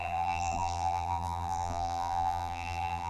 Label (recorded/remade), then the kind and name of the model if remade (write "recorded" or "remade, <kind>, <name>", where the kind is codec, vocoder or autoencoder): remade, vocoder, BigVGAN v2